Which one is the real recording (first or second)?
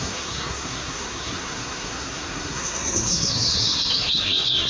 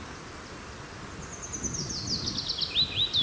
second